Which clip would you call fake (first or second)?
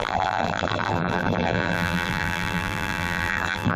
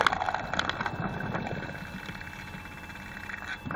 first